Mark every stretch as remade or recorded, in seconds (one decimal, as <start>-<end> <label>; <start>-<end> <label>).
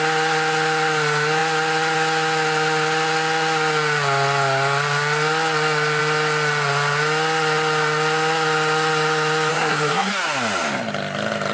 0.0-9.5 recorded; 9.5-10.1 remade; 10.1-11.5 recorded